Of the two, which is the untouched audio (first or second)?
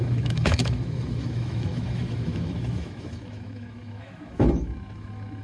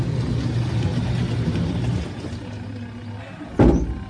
second